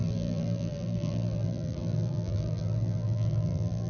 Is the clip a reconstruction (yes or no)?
yes